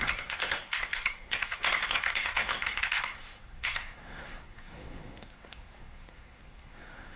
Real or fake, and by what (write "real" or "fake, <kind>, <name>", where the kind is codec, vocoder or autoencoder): fake, codec, SNAC